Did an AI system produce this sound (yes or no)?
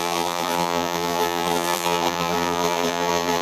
yes